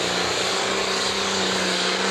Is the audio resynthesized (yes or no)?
yes